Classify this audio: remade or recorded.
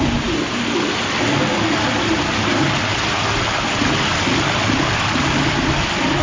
recorded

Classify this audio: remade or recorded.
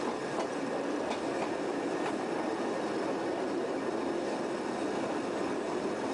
recorded